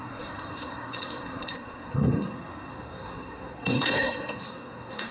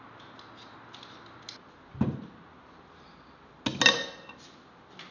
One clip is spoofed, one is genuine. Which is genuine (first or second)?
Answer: second